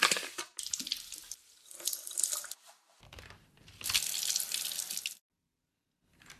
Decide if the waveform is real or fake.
real